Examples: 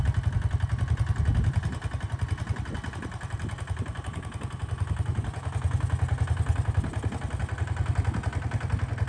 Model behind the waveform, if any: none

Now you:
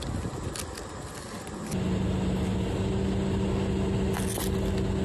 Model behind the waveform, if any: none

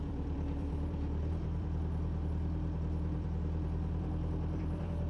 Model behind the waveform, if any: vocoder, BigVGAN v2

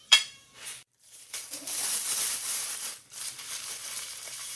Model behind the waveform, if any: vocoder, BigVGAN v2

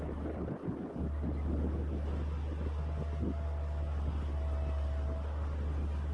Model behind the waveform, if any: none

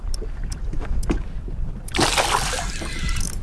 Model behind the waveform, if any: vocoder, BigVGAN v2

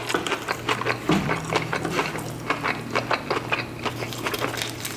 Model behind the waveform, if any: none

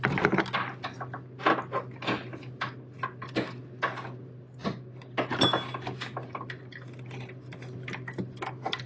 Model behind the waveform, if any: none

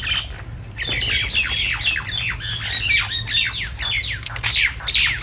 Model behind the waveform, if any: none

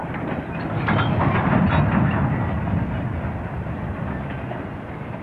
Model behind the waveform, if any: none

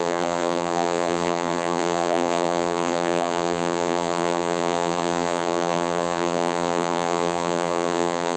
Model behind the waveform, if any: vocoder, BigVGAN v2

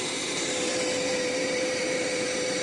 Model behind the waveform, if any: vocoder, BigVGAN v2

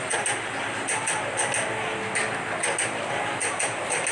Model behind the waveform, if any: none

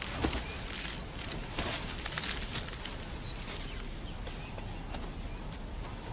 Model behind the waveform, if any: none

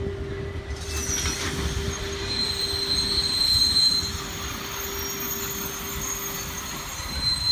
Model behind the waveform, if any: none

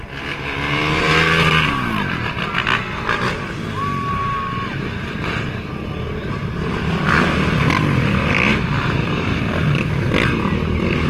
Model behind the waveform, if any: none